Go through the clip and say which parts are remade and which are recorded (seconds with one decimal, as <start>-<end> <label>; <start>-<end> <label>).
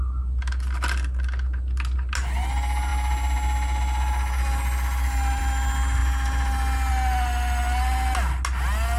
0.0-9.0 recorded